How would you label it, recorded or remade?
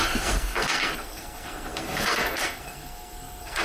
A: remade